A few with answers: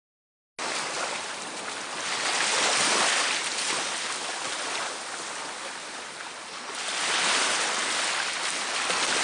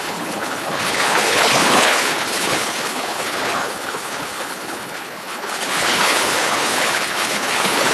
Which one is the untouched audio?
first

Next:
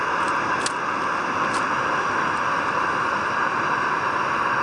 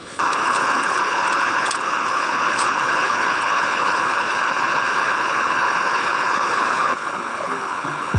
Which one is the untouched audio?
first